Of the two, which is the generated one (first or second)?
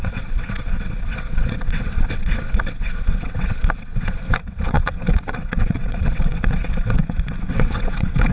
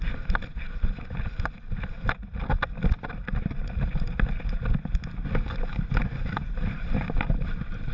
first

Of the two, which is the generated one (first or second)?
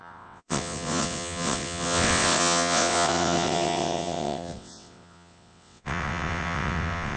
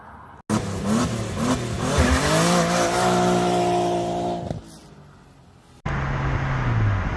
first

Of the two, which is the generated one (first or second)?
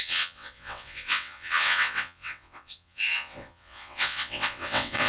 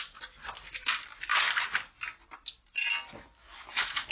first